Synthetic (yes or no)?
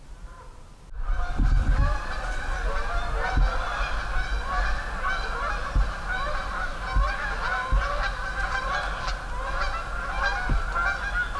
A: no